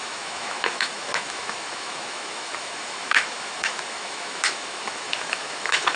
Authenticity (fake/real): fake